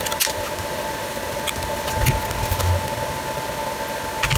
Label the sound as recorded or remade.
recorded